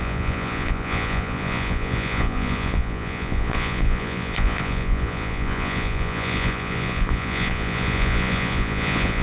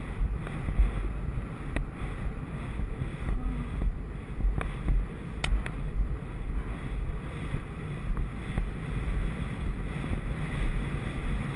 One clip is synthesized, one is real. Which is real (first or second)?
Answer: second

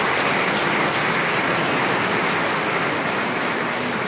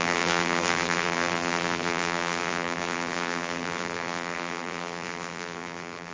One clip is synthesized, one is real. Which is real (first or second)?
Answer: first